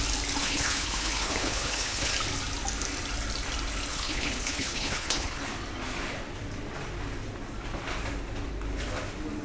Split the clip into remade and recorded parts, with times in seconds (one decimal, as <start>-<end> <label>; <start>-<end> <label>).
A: 0.0-0.4 recorded; 0.4-2.1 remade; 2.1-3.9 recorded; 3.9-5.4 remade; 5.4-9.4 recorded